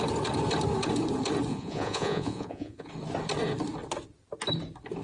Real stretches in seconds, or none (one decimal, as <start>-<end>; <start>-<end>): 0.0-1.5; 2.9-5.0